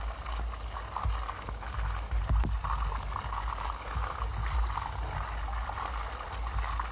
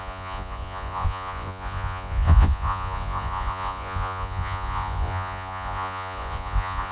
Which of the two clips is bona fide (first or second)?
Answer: first